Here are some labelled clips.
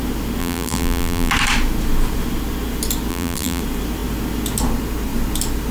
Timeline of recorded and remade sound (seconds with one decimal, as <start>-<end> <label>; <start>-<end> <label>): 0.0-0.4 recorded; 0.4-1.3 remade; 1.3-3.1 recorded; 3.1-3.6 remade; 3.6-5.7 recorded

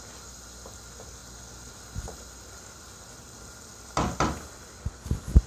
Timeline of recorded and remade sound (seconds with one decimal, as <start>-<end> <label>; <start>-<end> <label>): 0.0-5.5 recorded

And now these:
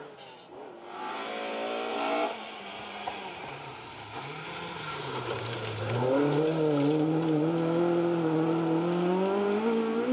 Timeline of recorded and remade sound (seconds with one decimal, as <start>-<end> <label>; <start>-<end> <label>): 0.0-1.9 recorded; 1.9-5.4 remade; 5.4-10.1 recorded

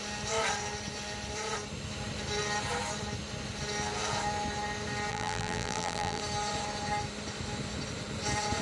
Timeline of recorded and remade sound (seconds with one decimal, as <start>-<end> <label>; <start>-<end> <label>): 0.0-5.1 recorded; 5.1-6.2 remade; 6.2-8.6 recorded

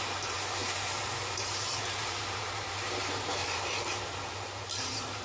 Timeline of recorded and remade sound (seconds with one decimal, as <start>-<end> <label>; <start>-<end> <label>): 0.0-5.2 remade